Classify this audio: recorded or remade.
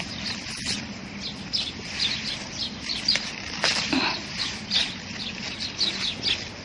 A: recorded